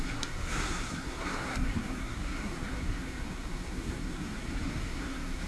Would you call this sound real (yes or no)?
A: no